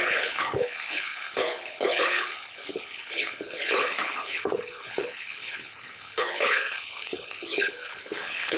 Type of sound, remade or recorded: remade